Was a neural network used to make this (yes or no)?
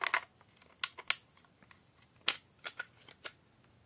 no